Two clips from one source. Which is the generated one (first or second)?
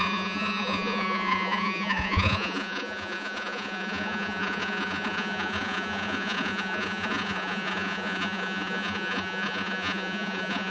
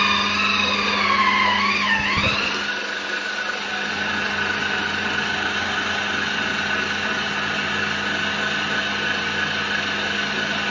first